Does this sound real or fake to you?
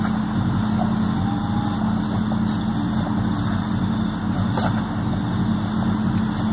real